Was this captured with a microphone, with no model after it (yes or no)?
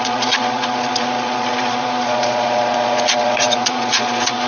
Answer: no